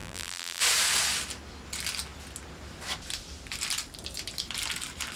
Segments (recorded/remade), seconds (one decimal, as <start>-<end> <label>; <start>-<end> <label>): 0.0-0.6 remade; 0.6-5.2 recorded